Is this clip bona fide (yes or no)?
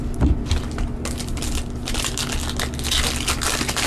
yes